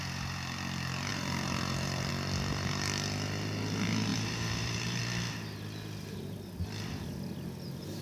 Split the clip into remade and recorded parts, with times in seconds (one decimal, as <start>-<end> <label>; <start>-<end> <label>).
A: 0.0-1.1 recorded; 1.1-2.1 remade; 2.1-4.1 recorded; 4.1-5.0 remade; 5.0-8.0 recorded